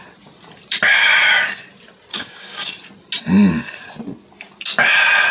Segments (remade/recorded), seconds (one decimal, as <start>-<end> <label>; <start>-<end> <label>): 0.0-2.1 recorded; 2.1-2.7 remade; 2.7-5.3 recorded